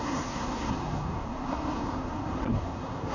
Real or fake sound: fake